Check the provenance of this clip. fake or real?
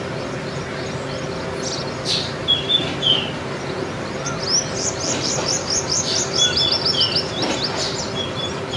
real